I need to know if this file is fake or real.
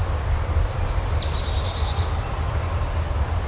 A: real